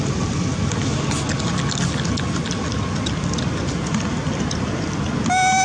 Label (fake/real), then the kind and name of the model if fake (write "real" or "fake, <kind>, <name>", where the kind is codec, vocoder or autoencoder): real